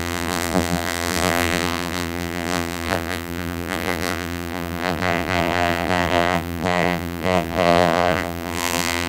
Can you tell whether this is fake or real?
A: fake